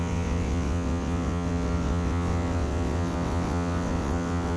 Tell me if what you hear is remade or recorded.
remade